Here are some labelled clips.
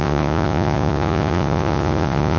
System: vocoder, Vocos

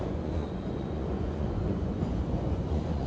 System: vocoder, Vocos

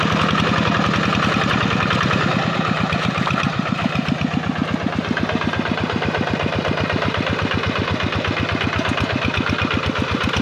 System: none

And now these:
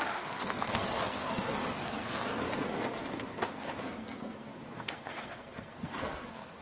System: codec, SNAC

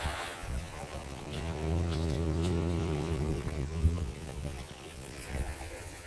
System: vocoder, Vocos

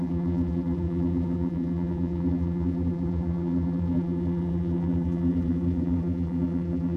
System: vocoder, BigVGAN v2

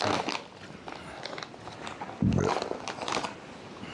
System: none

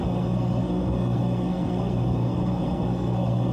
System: codec, SNAC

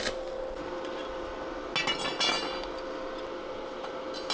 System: none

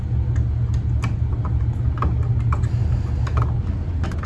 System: none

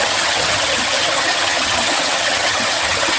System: vocoder, HiFi-GAN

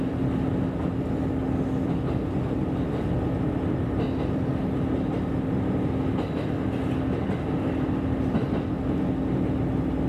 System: none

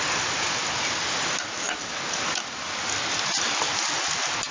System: none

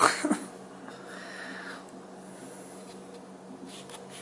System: none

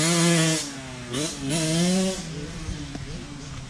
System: none